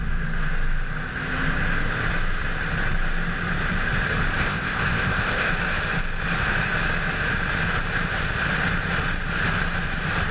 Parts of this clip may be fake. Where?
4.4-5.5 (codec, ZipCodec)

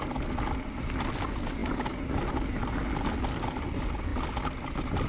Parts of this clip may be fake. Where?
4.1-5.1 (vocoder, BigVGAN v2)

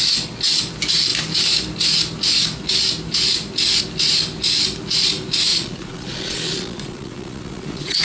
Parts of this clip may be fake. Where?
5.5-8.0 (vocoder, Vocos)